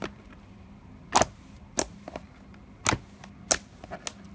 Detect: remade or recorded recorded